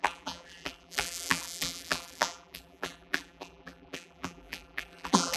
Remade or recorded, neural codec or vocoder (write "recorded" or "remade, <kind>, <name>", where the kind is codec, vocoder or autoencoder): remade, vocoder, BigVGAN v2